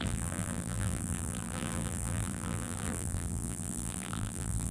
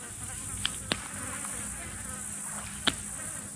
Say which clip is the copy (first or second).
first